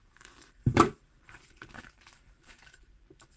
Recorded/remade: remade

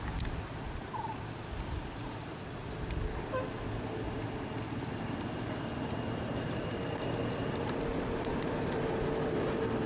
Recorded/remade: recorded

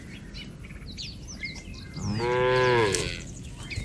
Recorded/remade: recorded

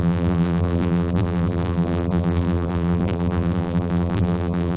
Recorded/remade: remade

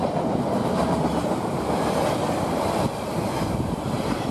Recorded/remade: recorded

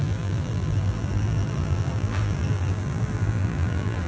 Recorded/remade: remade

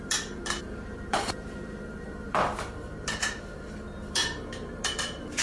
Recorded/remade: remade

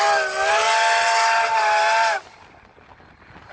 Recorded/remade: recorded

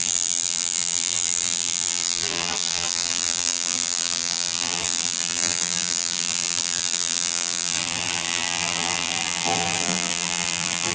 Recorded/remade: remade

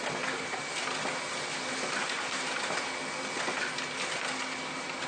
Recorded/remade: recorded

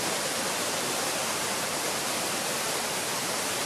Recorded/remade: remade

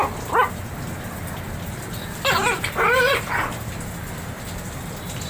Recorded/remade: recorded